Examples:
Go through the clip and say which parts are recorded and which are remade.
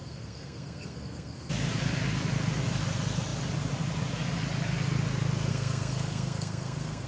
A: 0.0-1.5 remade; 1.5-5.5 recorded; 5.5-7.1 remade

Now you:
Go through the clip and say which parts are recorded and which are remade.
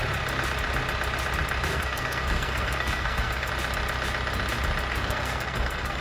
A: 0.0-1.7 recorded; 1.7-3.5 remade; 3.5-4.9 recorded; 4.9-6.0 remade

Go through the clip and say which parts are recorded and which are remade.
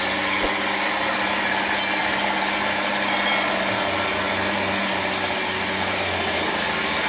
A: 0.0-7.1 recorded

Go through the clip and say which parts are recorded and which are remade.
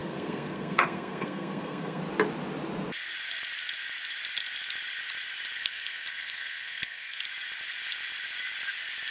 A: 0.0-2.0 remade; 2.0-5.6 recorded; 5.6-7.2 remade; 7.2-9.1 recorded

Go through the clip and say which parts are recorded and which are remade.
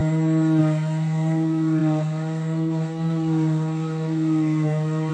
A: 0.0-0.6 recorded; 0.6-5.1 remade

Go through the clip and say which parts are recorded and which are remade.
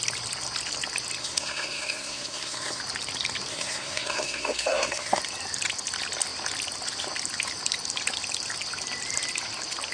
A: 0.0-1.2 recorded; 1.2-2.8 remade; 2.8-3.5 recorded; 3.5-5.2 remade; 5.2-9.9 recorded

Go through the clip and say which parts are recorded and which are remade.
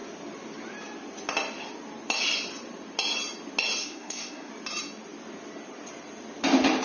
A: 0.0-3.8 recorded; 3.8-4.5 remade; 4.5-6.8 recorded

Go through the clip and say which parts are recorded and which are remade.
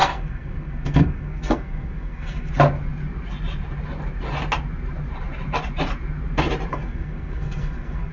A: 0.0-2.5 remade; 2.5-6.7 recorded; 6.7-8.1 remade